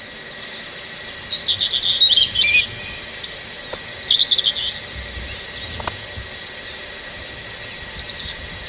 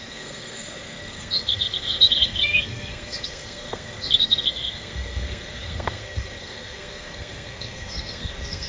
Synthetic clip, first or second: second